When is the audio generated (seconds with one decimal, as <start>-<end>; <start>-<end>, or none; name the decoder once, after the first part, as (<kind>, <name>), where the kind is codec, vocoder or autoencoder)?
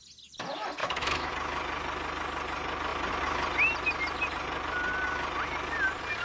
0.8-1.3 (autoencoder, DAC-VAE)